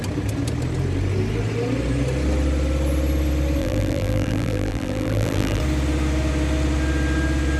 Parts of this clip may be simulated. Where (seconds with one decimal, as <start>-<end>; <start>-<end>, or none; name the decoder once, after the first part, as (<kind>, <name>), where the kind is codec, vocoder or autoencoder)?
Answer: 3.6-5.6 (vocoder, BigVGAN v2)